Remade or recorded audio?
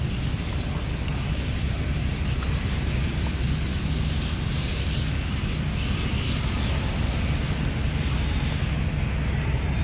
recorded